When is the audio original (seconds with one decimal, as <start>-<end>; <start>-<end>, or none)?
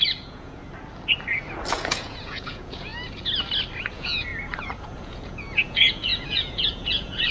0.6-1.7; 2.9-3.8; 4.3-4.8